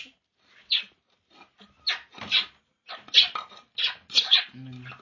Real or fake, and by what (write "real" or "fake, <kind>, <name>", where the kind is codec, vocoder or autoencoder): real